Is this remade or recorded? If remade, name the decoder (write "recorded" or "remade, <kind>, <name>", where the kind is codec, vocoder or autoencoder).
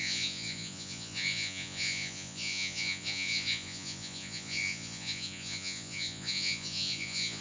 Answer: remade, vocoder, Vocos